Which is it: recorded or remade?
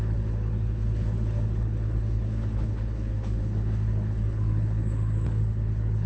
remade